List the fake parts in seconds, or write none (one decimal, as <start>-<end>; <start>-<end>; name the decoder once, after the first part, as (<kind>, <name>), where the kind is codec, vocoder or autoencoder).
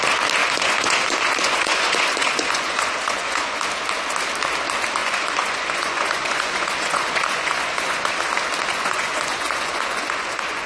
0.4-3.6 (vocoder, Vocos); 5.0-8.1; 8.7-10.7